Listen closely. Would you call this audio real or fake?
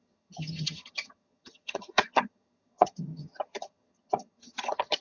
fake